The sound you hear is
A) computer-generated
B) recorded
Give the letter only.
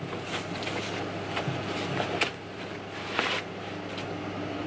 B